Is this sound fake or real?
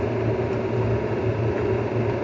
real